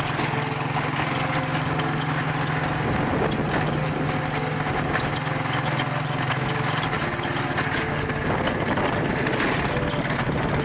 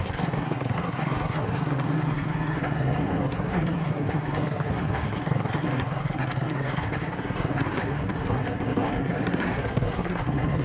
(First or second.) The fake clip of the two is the second